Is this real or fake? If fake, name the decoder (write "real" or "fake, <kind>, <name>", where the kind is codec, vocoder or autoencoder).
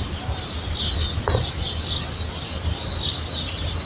real